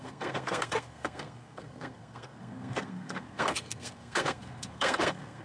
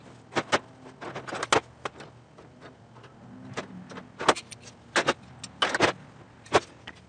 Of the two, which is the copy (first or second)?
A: first